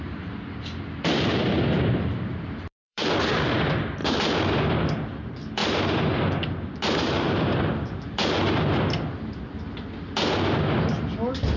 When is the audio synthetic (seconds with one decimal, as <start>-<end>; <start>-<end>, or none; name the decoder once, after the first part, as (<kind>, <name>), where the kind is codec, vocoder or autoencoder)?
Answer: 2.3-3.0 (vocoder, BigVGAN v2); 5.6-7.7